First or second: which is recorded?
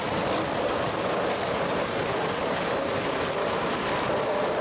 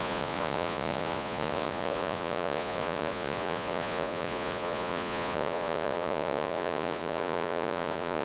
first